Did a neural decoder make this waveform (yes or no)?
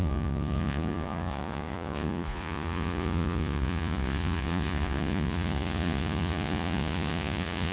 yes